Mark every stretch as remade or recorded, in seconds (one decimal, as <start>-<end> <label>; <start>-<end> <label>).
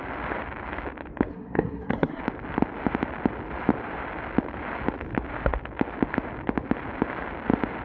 0.0-1.3 recorded; 1.3-2.2 remade; 2.2-7.8 recorded